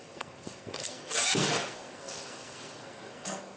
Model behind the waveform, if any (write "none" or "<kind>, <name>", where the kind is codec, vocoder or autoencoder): codec, SNAC